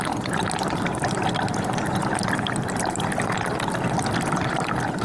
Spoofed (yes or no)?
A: no